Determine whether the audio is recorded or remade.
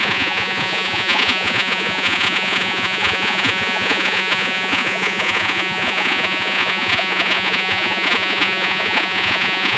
remade